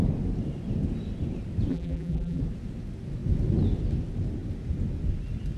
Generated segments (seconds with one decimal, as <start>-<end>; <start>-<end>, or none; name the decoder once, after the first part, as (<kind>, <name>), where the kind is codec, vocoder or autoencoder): 1.7-2.4 (vocoder, BigVGAN v2)